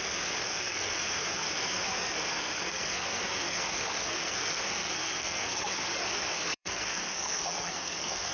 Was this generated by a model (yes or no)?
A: yes